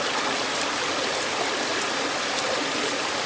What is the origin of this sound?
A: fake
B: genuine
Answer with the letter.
B